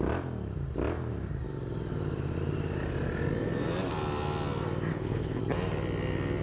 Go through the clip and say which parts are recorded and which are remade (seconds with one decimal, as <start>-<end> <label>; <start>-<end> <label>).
0.0-4.9 recorded; 4.9-5.4 remade; 5.4-6.4 recorded